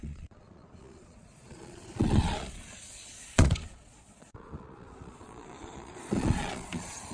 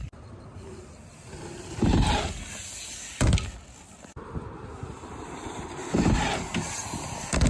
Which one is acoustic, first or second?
second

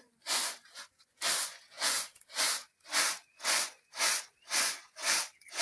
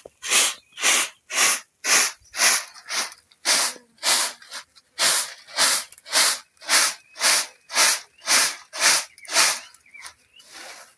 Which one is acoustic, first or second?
second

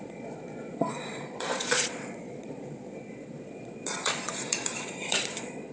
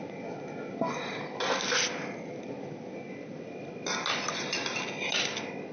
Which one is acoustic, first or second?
second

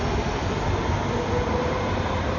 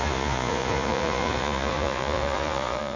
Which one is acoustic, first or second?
first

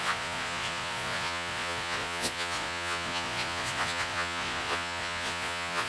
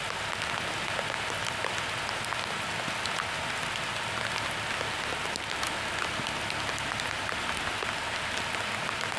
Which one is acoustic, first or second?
second